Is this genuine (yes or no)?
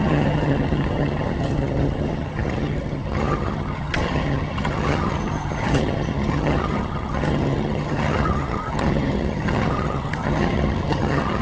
no